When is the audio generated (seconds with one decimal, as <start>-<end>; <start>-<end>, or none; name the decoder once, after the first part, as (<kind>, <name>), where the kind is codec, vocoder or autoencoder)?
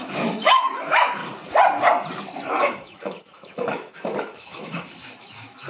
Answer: 0.0-1.2 (autoencoder, DAC-VAE); 2.5-5.7